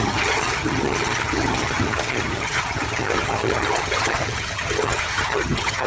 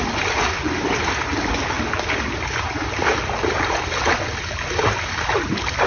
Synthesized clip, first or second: first